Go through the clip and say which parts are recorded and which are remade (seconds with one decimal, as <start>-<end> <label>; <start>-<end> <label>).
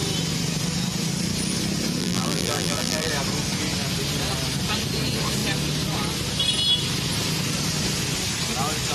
0.0-2.0 recorded; 2.0-3.1 remade; 3.1-8.9 recorded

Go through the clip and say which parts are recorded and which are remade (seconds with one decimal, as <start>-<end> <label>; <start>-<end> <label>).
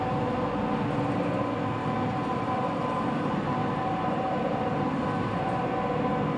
0.0-1.8 recorded; 1.8-5.6 remade; 5.6-6.4 recorded